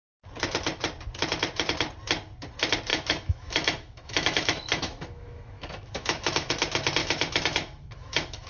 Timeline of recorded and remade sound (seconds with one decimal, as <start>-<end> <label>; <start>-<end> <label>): 0.0-2.9 recorded; 2.9-6.5 remade; 6.5-7.0 recorded; 7.0-8.5 remade